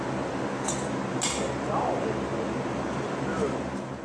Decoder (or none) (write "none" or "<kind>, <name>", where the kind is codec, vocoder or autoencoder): none